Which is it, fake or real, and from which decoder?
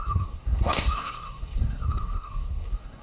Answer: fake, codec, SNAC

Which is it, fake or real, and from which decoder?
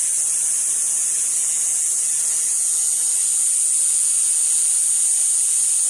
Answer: fake, vocoder, BigVGAN v2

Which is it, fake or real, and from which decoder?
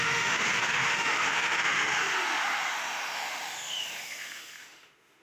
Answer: fake, autoencoder, DAC-VAE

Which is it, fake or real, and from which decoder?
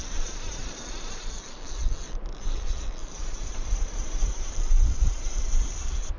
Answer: fake, vocoder, BigVGAN v2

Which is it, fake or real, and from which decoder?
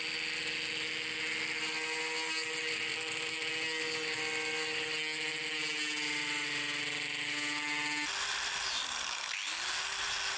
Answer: real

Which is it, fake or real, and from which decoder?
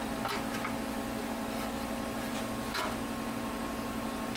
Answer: real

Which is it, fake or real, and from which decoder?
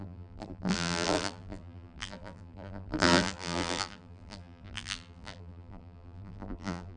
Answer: fake, vocoder, BigVGAN v2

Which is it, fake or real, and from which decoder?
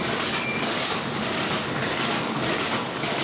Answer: fake, codec, DAC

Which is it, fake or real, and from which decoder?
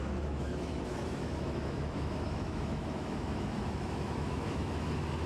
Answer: fake, autoencoder, DAC-VAE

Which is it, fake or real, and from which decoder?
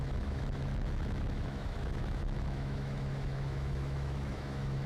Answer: fake, autoencoder, DAC-VAE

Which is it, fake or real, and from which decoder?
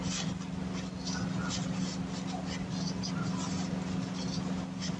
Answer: real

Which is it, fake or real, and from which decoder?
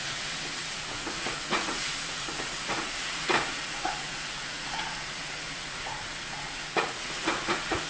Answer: fake, vocoder, Vocos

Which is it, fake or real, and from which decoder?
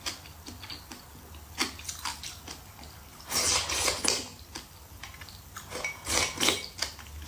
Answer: real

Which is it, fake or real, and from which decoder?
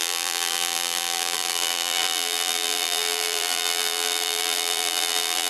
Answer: fake, vocoder, BigVGAN v2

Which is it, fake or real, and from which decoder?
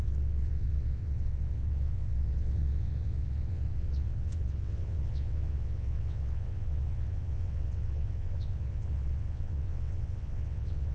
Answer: fake, vocoder, WaveNeXt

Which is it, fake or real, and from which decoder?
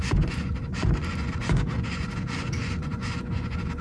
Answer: fake, vocoder, Vocos